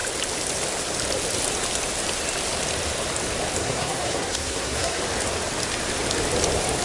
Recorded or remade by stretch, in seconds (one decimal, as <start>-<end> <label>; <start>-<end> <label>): 0.0-3.6 recorded; 3.6-5.0 remade; 5.0-6.8 recorded